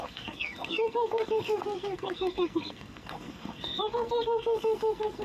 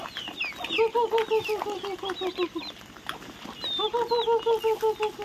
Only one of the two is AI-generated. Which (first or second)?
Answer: first